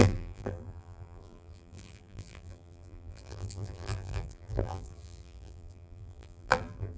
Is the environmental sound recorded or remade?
remade